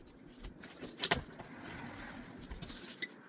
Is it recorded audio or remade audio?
recorded